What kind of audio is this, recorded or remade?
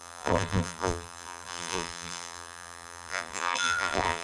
remade